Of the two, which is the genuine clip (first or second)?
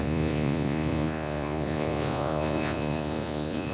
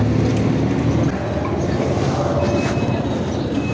second